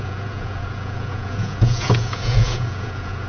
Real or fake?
fake